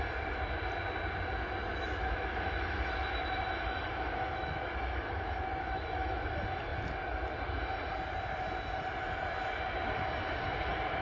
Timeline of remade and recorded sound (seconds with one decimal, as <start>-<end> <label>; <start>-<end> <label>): 0.0-1.7 recorded; 1.7-6.2 remade; 6.2-11.0 recorded